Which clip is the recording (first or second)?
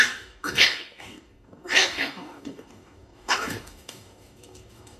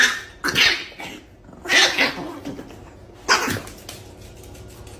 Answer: second